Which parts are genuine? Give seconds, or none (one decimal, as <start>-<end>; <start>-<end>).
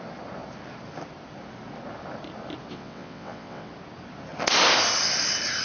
0.0-2.7; 3.7-5.6